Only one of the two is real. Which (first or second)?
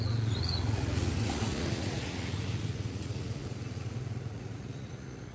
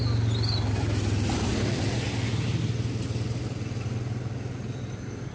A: second